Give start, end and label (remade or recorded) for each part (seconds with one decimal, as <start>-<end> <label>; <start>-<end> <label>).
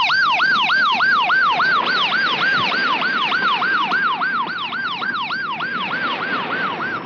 0.0-0.9 recorded; 0.9-1.8 remade; 1.8-2.5 recorded; 2.5-5.1 remade; 5.1-5.7 recorded; 5.7-7.1 remade